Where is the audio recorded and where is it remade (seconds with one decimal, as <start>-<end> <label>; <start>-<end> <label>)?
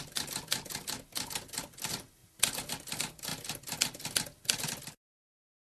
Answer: 0.0-5.6 recorded